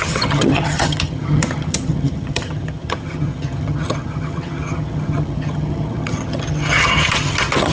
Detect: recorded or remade remade